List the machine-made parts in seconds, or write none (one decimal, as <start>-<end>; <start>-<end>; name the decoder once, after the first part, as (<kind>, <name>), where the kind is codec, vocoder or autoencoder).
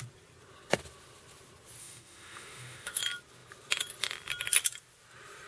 1.8-3.0 (autoencoder, DAC-VAE)